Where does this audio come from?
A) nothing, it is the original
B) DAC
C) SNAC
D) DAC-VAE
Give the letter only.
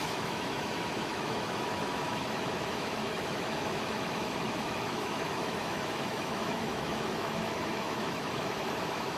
D